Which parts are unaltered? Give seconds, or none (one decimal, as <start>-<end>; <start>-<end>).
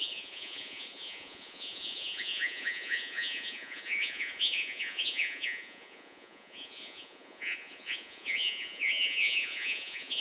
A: none